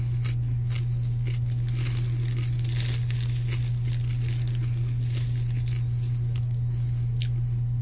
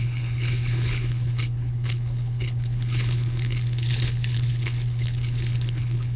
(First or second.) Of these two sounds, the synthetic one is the second